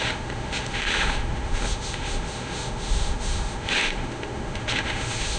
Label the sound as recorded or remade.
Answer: remade